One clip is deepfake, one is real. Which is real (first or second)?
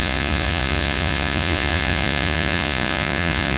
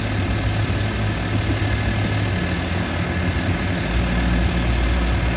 second